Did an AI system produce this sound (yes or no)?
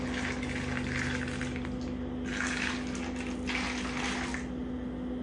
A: no